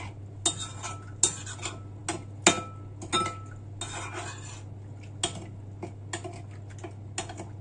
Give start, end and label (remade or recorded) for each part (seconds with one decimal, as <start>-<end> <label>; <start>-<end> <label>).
0.0-7.6 recorded

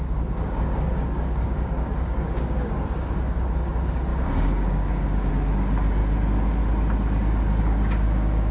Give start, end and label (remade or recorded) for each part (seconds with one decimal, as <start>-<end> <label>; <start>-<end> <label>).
0.0-6.0 remade; 6.0-7.6 recorded; 7.6-8.5 remade